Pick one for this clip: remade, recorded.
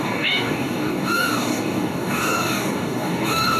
remade